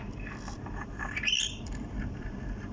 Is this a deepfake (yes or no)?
yes